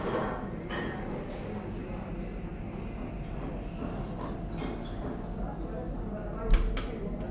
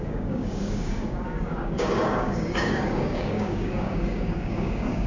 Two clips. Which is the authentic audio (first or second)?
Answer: first